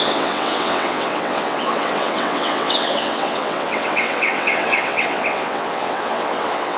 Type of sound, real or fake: fake